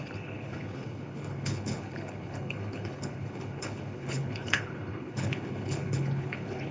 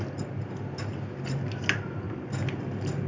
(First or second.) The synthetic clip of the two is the first